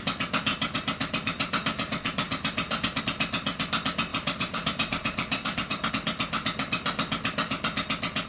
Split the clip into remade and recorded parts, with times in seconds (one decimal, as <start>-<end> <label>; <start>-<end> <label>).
0.0-0.5 recorded; 0.5-3.0 remade; 3.0-4.1 recorded; 4.1-5.9 remade; 5.9-8.3 recorded